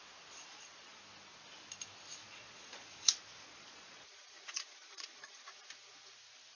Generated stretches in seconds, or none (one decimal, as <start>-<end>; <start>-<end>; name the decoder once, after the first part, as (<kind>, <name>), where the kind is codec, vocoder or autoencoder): 0.5-1.0 (vocoder, Vocos); 2.2-5.5